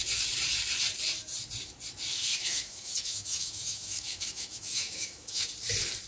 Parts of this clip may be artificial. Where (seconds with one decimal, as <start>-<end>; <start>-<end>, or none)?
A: 2.1-5.5

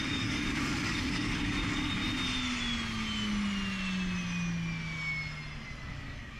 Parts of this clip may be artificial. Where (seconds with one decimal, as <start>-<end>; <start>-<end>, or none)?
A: 0.0-2.0; 5.8-6.4

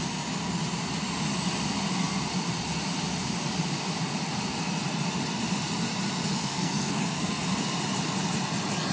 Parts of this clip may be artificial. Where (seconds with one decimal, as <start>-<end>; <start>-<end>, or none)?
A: 6.3-7.4